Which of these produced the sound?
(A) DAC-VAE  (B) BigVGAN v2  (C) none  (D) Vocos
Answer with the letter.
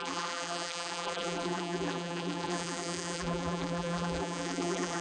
B